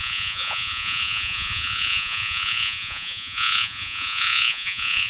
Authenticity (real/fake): fake